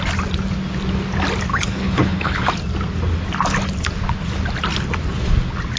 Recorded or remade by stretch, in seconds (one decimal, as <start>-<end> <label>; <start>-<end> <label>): 0.0-1.5 recorded; 1.5-2.5 remade; 2.5-5.8 recorded